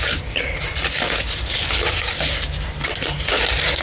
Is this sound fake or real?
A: real